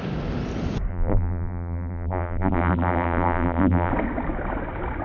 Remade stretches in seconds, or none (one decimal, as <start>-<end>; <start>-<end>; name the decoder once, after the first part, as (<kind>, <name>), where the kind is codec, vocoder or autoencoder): 0.9-3.9 (vocoder, BigVGAN v2)